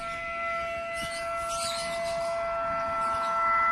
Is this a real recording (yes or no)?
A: yes